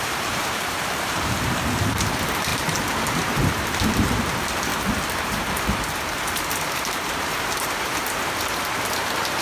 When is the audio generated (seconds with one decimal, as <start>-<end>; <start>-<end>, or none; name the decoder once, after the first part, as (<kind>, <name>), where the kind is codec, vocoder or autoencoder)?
0.0-4.7 (vocoder, BigVGAN v2); 5.2-9.4